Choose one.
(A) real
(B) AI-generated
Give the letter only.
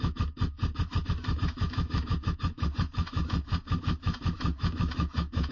B